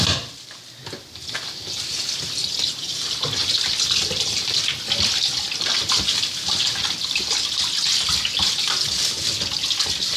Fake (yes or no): no